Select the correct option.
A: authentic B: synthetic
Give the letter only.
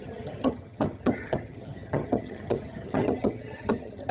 B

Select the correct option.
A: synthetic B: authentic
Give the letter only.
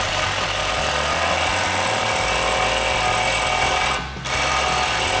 B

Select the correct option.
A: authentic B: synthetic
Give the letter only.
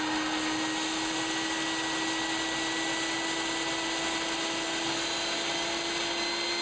A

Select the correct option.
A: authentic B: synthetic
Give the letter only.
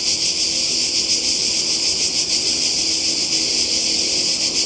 A